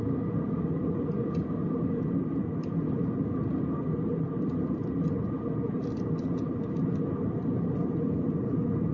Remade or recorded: recorded